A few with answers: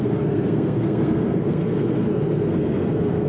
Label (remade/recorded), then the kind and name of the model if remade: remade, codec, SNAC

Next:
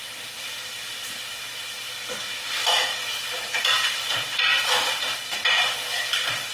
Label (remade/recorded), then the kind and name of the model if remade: recorded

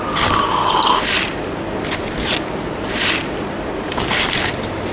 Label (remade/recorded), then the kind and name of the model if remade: recorded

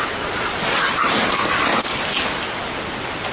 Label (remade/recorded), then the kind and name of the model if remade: recorded